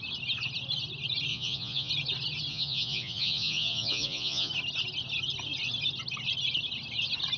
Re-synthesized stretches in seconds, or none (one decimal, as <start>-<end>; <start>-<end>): 1.3-1.9; 2.5-4.5